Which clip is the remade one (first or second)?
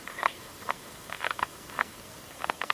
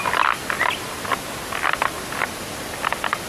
first